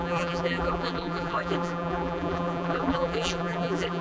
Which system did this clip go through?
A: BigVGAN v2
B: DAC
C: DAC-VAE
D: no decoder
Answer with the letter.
A